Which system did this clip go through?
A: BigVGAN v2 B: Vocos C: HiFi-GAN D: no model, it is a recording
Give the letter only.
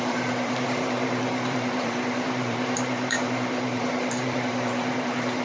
A